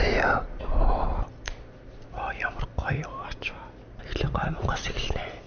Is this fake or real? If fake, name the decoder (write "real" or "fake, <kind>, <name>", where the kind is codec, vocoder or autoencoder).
real